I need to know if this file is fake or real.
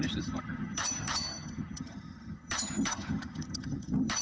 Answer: fake